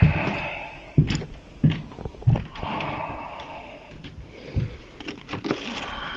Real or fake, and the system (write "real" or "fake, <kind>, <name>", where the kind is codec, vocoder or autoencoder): real